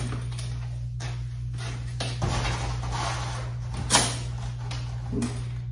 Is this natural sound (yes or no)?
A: yes